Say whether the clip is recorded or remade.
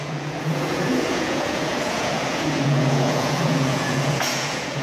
remade